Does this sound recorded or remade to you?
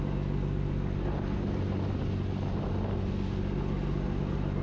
recorded